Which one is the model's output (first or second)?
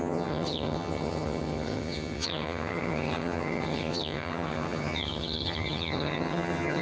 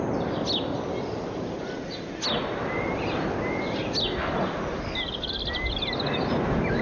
first